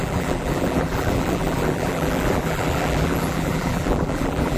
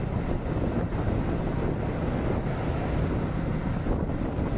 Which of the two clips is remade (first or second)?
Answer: first